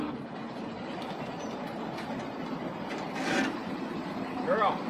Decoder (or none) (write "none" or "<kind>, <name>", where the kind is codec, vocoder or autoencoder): none